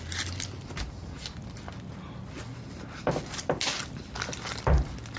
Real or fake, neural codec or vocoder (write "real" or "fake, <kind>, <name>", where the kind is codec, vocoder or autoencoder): real